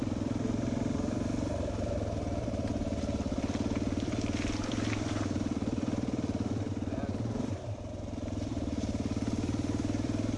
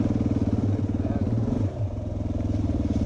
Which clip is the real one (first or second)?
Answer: second